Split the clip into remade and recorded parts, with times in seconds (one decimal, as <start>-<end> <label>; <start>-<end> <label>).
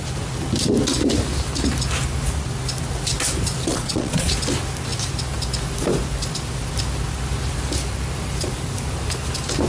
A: 0.0-3.7 recorded; 3.7-4.3 remade; 4.3-9.7 recorded